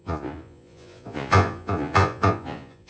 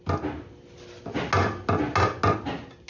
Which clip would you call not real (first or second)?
first